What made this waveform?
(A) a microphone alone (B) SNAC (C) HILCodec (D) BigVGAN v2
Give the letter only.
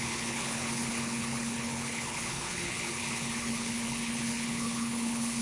C